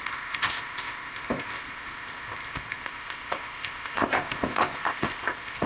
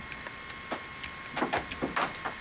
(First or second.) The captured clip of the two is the second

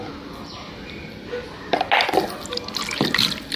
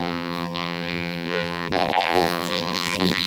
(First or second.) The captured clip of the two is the first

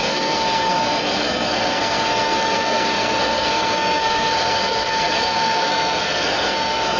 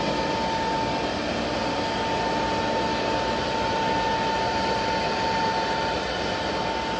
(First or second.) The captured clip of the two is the second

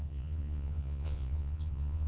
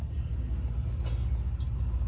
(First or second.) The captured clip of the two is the second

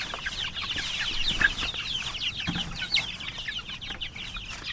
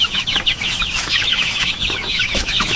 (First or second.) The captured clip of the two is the first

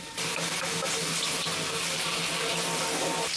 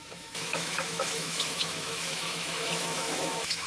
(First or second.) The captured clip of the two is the first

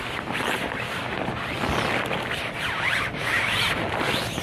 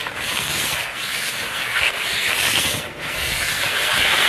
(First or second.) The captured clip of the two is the first